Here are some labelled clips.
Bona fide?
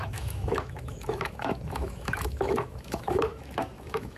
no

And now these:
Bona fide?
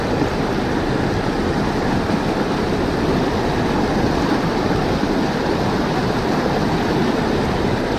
yes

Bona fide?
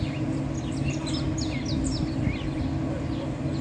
yes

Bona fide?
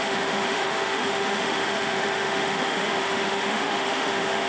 no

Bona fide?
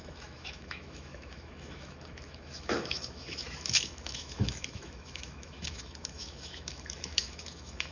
no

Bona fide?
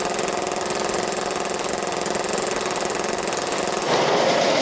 yes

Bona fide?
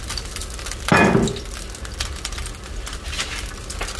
yes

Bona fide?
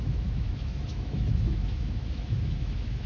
no